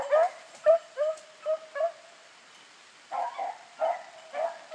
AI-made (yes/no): no